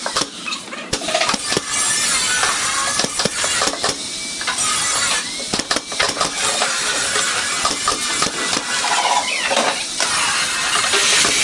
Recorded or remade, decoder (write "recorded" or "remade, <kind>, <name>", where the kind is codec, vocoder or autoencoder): recorded